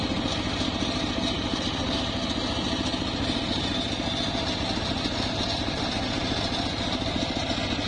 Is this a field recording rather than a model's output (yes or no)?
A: yes